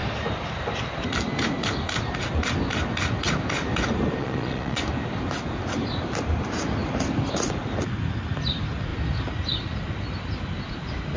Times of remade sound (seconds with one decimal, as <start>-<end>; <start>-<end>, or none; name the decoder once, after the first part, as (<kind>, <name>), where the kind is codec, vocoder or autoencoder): 4.2-4.8 (vocoder, Vocos)